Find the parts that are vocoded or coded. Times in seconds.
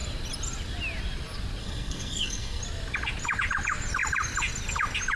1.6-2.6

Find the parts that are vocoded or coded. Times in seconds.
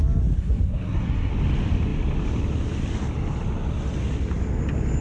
0.4-1.3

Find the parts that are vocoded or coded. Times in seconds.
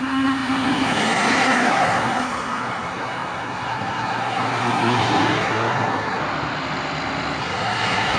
0.0-6.2; 7.4-8.2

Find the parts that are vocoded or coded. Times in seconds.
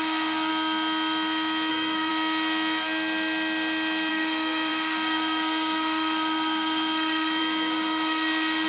0.0-0.5; 1.7-2.1; 4.1-8.7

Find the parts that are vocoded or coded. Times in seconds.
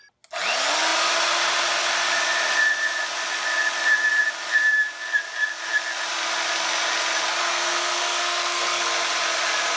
7.5-8.9